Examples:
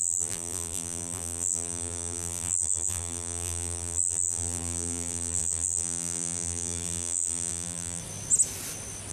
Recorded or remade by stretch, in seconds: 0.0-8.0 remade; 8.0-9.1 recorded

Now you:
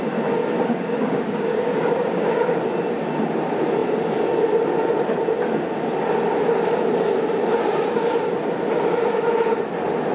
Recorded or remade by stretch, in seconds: 0.0-0.4 recorded; 0.4-2.6 remade; 2.6-10.1 recorded